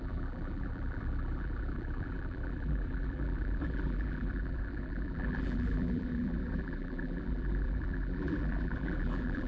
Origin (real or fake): fake